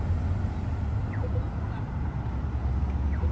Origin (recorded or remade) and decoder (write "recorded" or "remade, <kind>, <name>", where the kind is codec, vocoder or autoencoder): recorded